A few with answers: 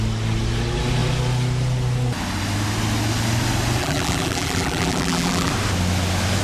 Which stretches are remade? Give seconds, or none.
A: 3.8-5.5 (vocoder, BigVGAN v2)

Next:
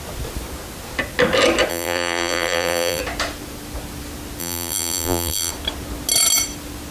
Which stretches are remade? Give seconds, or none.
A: 1.7-3.0 (vocoder, BigVGAN v2); 4.4-5.5

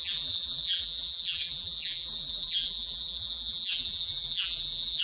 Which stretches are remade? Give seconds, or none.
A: 0.0-5.0 (vocoder, BigVGAN v2)

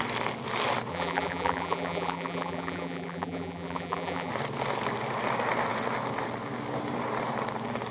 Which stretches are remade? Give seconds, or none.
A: 0.9-4.3 (vocoder, BigVGAN v2)

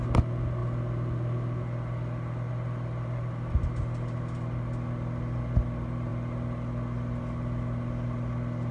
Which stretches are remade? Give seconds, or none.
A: none

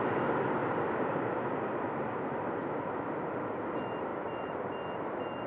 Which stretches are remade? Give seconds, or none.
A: 0.6-2.6 (vocoder, BigVGAN v2); 4.1-4.7

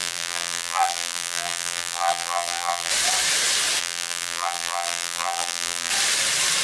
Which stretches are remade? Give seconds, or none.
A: 0.0-2.9 (vocoder, BigVGAN v2); 3.8-5.9